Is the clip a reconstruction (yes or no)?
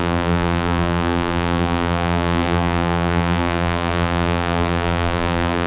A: yes